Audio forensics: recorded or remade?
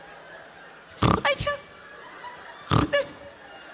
recorded